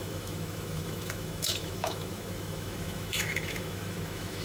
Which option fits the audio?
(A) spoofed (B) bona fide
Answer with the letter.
A